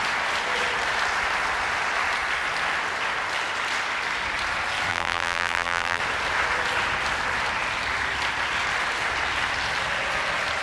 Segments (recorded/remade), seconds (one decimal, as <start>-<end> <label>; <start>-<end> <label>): 0.0-4.9 recorded; 4.9-6.0 remade; 6.0-10.6 recorded